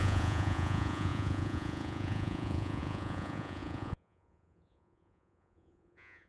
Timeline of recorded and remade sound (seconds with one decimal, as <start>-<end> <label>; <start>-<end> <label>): 0.0-6.3 remade